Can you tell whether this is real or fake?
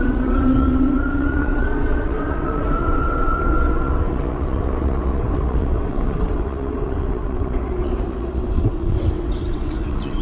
fake